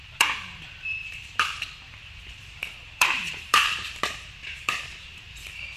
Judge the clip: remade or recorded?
remade